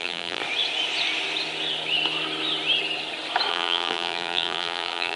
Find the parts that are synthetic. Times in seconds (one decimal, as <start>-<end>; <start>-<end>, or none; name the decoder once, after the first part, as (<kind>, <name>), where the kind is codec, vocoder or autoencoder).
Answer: 0.0-0.4 (vocoder, BigVGAN v2); 3.5-5.2